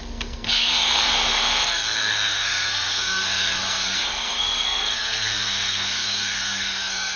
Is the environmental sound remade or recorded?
remade